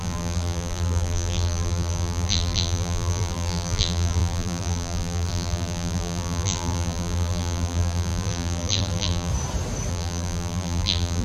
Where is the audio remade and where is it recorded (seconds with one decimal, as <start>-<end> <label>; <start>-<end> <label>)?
0.0-9.3 remade; 9.3-9.9 recorded; 9.9-11.2 remade